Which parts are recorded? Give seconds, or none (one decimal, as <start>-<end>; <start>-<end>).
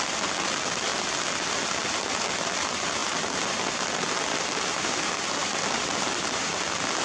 0.0-5.4; 6.5-7.0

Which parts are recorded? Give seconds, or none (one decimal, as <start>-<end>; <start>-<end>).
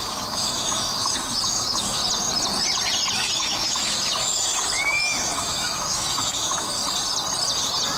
2.0-3.1; 6.7-8.0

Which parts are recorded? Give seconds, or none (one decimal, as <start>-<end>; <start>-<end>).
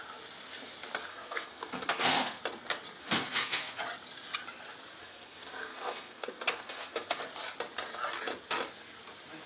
0.0-1.1; 2.4-3.0; 3.8-5.0; 7.2-9.5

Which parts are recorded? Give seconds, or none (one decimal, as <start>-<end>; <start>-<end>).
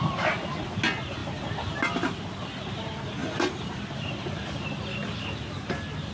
0.0-1.2; 2.1-3.2; 4.8-6.1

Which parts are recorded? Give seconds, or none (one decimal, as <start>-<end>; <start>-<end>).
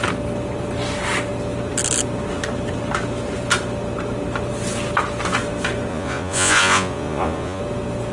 0.0-5.9; 7.6-8.1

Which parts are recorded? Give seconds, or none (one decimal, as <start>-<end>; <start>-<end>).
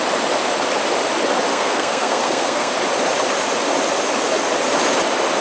0.0-1.5; 2.7-5.4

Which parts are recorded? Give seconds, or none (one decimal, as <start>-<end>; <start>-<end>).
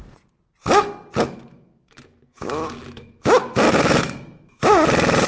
0.0-1.5; 4.7-5.3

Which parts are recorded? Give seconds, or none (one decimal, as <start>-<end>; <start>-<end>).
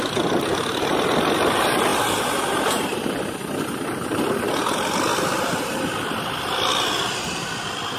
0.0-8.0